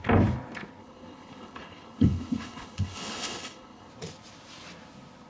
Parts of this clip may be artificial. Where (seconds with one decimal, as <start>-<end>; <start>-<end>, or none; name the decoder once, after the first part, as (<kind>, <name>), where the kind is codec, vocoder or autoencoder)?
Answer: 0.8-3.9 (codec, HILCodec)